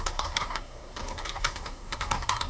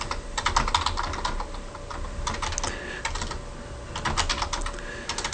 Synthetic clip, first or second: first